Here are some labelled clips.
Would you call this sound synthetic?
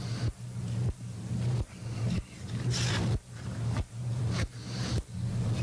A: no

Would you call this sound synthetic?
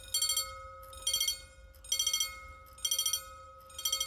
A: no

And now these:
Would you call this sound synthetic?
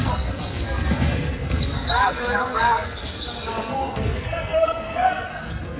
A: yes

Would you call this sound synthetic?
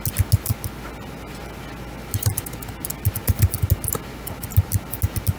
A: no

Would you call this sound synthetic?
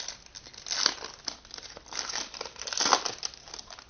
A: no